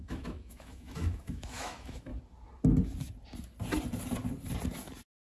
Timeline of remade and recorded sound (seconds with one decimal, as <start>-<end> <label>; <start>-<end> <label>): 0.0-2.1 remade; 2.1-5.2 recorded